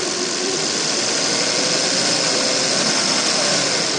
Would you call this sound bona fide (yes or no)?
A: yes